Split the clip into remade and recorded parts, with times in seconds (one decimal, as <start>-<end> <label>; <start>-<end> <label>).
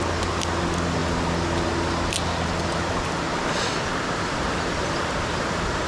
0.0-5.9 recorded